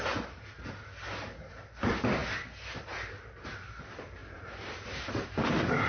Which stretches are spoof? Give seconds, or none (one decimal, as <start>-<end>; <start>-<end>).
2.2-2.8; 4.2-5.1